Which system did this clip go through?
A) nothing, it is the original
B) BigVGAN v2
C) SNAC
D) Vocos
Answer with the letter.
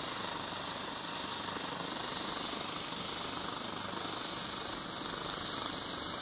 A